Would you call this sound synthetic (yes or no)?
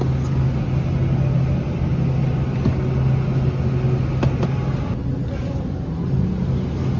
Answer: no